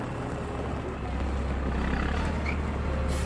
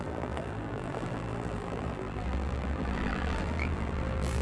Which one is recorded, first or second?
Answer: first